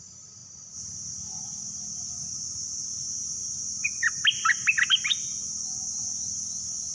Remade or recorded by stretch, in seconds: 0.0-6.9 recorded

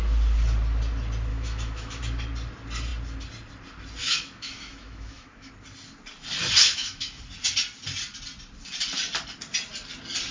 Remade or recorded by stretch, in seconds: 0.0-1.3 recorded; 1.3-2.0 remade; 2.0-4.0 recorded; 4.0-5.5 remade; 5.5-6.6 recorded; 6.6-7.2 remade; 7.2-10.3 recorded

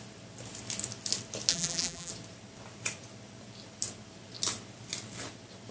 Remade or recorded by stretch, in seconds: 0.0-1.5 recorded; 1.5-2.1 remade; 2.1-5.7 recorded

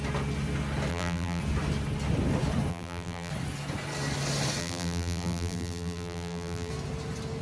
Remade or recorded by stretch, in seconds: 0.0-0.9 recorded; 0.9-1.4 remade; 1.4-2.7 recorded; 2.7-3.3 remade; 3.3-4.6 recorded; 4.6-6.7 remade; 6.7-7.4 recorded